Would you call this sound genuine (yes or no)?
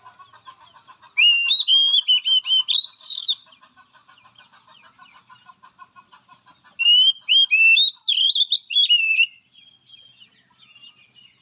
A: yes